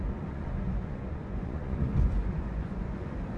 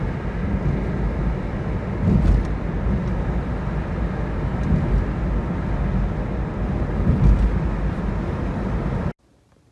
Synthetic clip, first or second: first